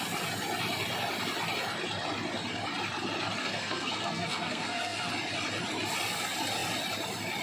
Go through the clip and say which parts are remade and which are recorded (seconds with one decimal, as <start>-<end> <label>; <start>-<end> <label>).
0.0-3.4 recorded; 3.4-5.1 remade; 5.1-7.4 recorded

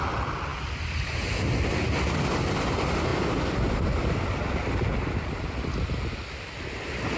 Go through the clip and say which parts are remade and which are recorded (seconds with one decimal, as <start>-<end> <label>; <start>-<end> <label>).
0.0-7.2 recorded